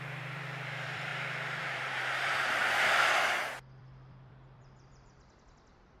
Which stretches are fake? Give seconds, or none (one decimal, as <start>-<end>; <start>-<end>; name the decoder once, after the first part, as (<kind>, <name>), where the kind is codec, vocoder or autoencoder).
0.0-1.1 (vocoder, BigVGAN v2); 1.6-2.6; 3.8-6.0